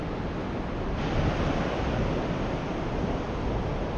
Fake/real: real